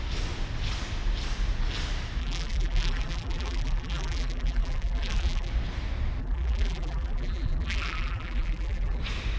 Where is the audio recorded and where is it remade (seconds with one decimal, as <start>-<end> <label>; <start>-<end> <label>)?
0.0-2.2 recorded; 2.2-5.5 remade; 5.5-6.2 recorded; 6.2-9.0 remade; 9.0-9.4 recorded